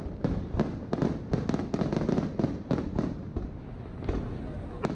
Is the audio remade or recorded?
recorded